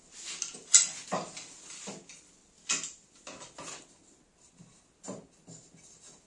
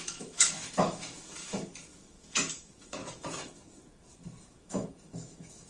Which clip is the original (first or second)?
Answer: first